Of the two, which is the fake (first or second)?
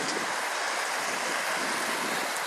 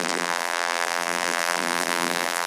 second